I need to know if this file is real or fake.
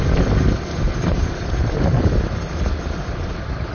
real